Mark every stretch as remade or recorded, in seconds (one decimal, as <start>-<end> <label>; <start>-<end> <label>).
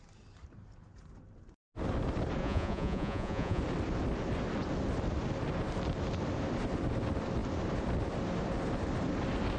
0.0-2.4 recorded; 2.4-3.6 remade; 3.6-9.6 recorded